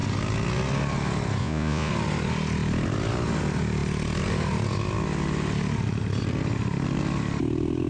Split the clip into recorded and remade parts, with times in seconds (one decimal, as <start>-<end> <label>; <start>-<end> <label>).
0.0-1.4 recorded; 1.4-1.9 remade; 1.9-7.9 recorded